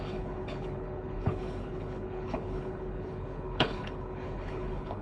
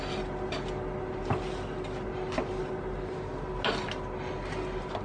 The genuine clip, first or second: second